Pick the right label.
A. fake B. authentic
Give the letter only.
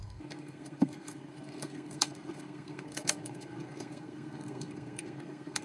A